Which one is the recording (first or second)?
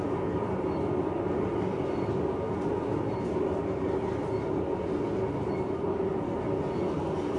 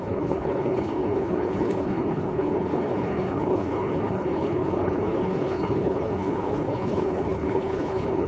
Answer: first